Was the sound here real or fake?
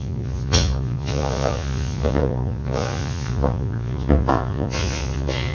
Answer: fake